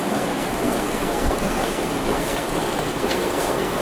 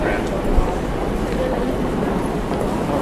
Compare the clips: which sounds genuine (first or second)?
second